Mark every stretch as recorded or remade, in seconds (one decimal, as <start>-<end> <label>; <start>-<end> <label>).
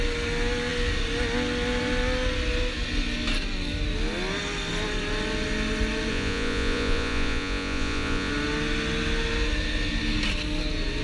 0.0-6.1 recorded; 6.1-8.3 remade; 8.3-11.0 recorded